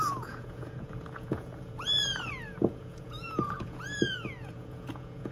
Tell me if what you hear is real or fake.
fake